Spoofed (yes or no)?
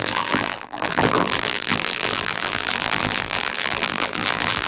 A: yes